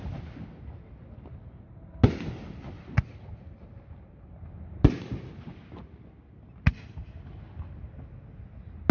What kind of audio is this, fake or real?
real